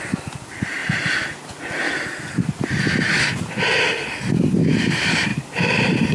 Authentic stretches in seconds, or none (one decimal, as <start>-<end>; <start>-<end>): 0.0-6.1